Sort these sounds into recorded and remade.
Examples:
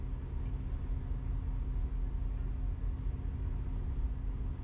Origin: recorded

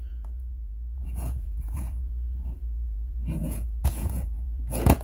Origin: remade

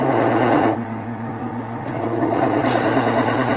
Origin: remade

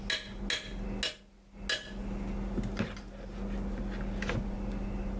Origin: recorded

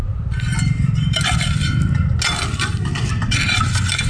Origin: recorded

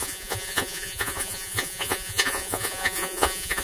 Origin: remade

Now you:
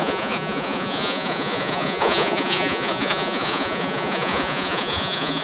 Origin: remade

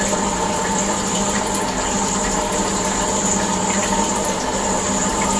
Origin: recorded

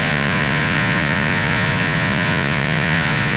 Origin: remade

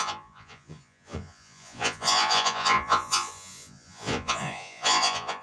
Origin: remade